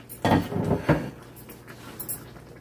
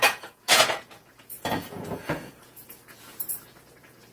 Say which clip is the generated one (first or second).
second